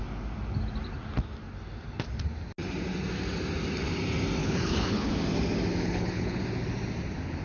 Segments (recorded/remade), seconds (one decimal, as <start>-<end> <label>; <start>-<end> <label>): 0.0-4.4 recorded; 4.4-5.1 remade; 5.1-5.8 recorded; 5.8-6.4 remade; 6.4-7.4 recorded